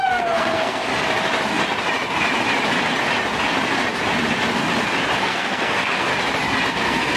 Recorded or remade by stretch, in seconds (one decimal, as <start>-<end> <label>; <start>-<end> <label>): 0.0-0.9 remade; 0.9-5.2 recorded; 5.2-6.1 remade; 6.1-6.7 recorded; 6.7-7.2 remade